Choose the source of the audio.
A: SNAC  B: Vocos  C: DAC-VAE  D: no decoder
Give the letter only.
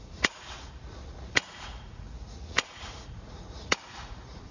B